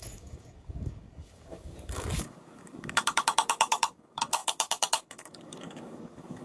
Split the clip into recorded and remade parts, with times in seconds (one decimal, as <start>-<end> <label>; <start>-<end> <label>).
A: 0.0-6.4 remade